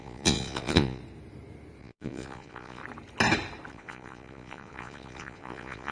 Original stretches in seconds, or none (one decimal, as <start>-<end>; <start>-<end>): 1.0-1.8; 2.8-3.7